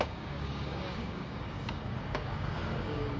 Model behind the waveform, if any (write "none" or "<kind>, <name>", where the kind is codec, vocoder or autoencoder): codec, DAC